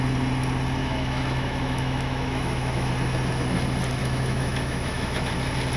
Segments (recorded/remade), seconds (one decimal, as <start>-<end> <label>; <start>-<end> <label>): 0.0-0.8 recorded; 0.8-2.9 remade; 2.9-4.0 recorded; 4.0-5.3 remade; 5.3-5.8 recorded